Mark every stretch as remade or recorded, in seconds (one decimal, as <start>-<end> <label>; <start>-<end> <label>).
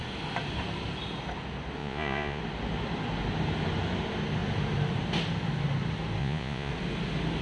0.0-1.8 recorded; 1.8-2.4 remade; 2.4-6.2 recorded; 6.2-6.7 remade; 6.7-7.4 recorded